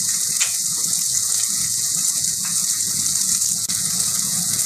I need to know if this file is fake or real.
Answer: fake